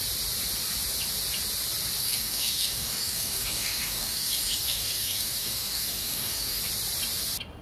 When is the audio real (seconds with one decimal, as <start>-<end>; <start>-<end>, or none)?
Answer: 0.0-2.0; 6.6-7.6